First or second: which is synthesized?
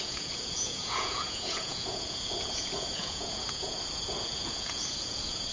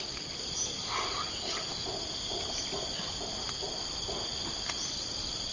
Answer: first